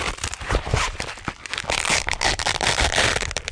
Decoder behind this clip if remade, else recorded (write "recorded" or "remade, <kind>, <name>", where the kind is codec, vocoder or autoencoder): remade, vocoder, BigVGAN v2